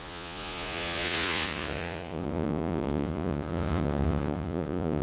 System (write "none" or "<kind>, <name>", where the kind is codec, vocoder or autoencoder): vocoder, Vocos